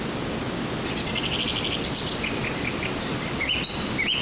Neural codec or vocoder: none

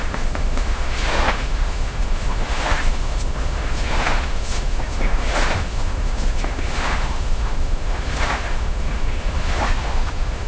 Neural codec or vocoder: autoencoder, DAC-VAE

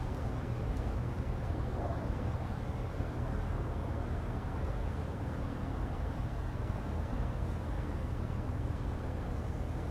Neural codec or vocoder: codec, SNAC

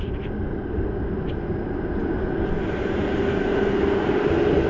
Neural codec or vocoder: none